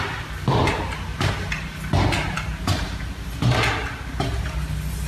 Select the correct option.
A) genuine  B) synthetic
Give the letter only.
A